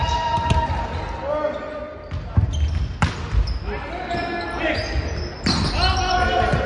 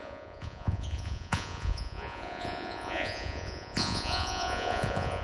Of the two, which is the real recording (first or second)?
first